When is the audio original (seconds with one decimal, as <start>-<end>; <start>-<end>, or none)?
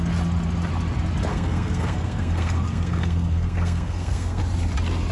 0.0-1.3; 4.4-5.1